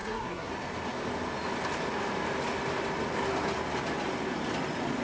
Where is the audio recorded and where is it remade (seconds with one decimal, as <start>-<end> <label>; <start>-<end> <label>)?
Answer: 0.0-0.5 remade; 0.5-5.0 recorded